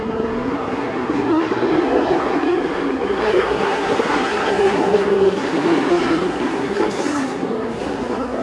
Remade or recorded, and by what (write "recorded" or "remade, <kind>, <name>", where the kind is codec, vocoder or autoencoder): remade, codec, SNAC